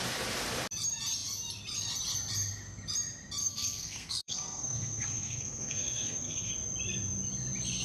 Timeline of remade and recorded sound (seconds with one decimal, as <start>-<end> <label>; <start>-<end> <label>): 0.0-3.4 recorded; 3.4-6.5 remade; 6.5-7.8 recorded